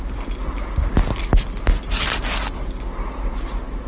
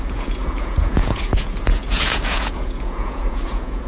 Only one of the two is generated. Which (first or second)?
second